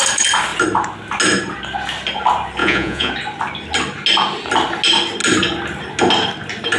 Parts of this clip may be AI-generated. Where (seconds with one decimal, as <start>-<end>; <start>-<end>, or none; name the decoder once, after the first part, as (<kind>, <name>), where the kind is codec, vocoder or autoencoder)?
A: 2.6-3.1 (vocoder, Vocos)